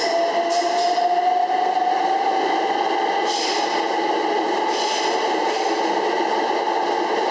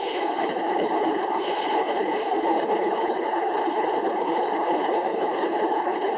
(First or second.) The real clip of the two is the first